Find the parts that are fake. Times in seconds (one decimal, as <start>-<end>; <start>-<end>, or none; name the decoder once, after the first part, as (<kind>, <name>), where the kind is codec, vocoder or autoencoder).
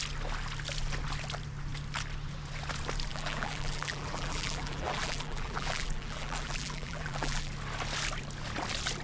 3.1-7.5 (vocoder, BigVGAN v2)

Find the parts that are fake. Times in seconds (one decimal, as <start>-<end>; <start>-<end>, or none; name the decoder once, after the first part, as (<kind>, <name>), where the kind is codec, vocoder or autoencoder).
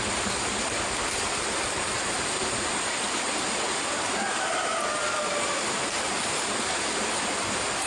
4.7-6.5 (vocoder, BigVGAN v2)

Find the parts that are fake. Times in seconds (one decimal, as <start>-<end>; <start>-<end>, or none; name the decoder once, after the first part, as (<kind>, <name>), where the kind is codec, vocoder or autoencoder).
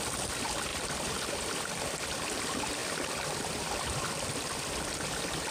2.8-4.8 (vocoder, BigVGAN v2)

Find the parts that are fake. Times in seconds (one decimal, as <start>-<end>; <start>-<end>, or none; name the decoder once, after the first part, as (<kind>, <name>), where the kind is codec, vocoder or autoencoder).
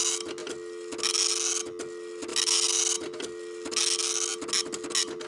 none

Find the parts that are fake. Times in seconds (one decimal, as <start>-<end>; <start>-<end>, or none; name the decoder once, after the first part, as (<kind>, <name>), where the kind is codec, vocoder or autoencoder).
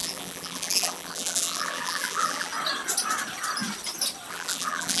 0.0-2.5 (vocoder, BigVGAN v2); 4.3-5.0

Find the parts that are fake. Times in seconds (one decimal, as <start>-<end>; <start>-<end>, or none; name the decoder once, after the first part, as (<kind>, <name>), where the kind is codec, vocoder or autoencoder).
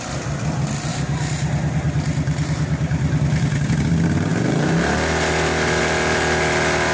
0.9-3.2 (vocoder, BigVGAN v2)